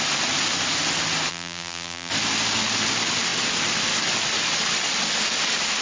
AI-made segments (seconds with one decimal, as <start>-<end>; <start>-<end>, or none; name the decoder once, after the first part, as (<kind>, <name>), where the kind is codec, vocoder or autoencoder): 1.3-2.1 (vocoder, BigVGAN v2)